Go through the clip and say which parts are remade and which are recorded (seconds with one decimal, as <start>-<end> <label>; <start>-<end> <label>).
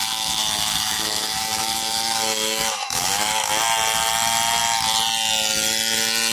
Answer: 0.0-3.5 remade; 3.5-6.3 recorded